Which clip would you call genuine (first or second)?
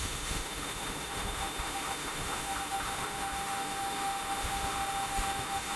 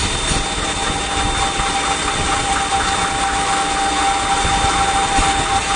second